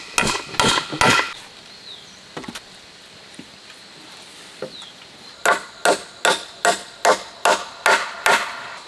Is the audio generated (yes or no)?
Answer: no